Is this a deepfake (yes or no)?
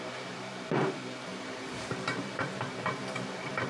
yes